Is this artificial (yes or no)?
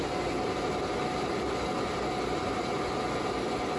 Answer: no